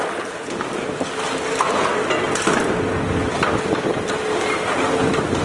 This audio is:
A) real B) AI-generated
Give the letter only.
A